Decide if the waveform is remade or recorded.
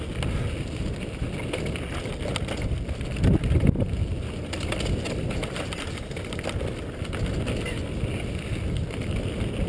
recorded